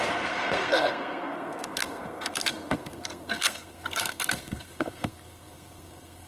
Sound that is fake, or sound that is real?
fake